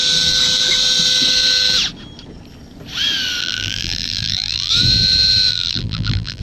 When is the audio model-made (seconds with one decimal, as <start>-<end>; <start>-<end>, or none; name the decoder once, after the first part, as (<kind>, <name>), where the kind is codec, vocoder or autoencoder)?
3.4-4.7 (vocoder, BigVGAN v2); 5.5-6.4